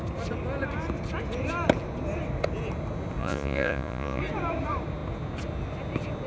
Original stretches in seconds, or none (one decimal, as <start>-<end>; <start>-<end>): 0.0-3.2; 4.2-6.3